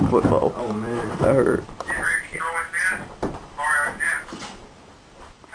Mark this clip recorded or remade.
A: remade